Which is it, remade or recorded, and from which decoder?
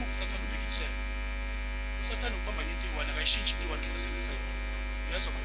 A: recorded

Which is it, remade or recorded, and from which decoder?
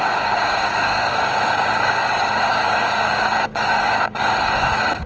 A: remade, codec, DAC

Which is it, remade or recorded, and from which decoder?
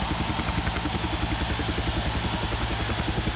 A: recorded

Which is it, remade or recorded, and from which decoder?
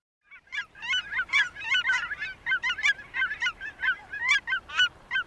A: remade, vocoder, BigVGAN v2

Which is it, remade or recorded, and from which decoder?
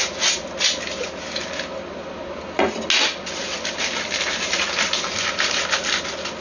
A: recorded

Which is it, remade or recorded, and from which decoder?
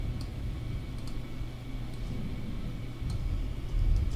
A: recorded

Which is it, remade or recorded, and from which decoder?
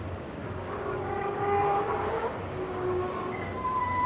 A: remade, codec, DAC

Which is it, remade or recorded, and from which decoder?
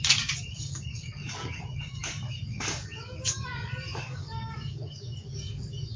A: remade, codec, DAC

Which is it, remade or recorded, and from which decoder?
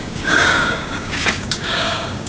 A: remade, codec, DAC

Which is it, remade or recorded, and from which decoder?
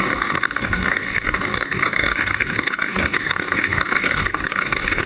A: remade, codec, DAC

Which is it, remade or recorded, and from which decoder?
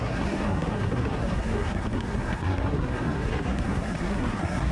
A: remade, codec, SNAC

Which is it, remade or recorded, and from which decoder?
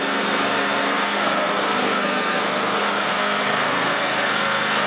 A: remade, codec, SNAC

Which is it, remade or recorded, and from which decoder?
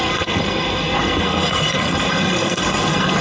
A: remade, codec, SNAC